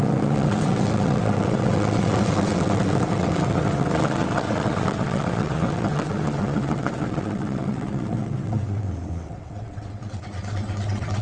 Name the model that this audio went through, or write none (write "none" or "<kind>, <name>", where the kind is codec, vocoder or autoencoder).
vocoder, WaveNeXt